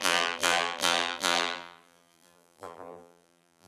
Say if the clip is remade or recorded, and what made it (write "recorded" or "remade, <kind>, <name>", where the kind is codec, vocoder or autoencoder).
remade, vocoder, BigVGAN v2